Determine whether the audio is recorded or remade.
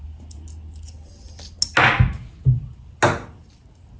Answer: recorded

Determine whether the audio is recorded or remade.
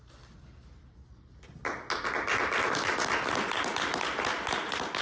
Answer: recorded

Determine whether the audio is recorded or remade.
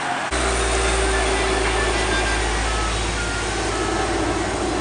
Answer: recorded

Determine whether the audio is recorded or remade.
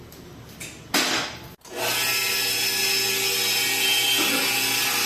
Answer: recorded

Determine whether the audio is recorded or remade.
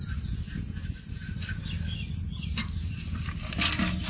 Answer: recorded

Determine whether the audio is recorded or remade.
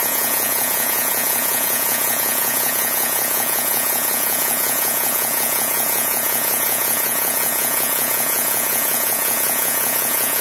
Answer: remade